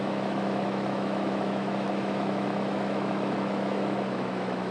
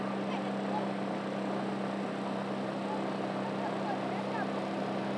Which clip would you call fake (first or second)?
first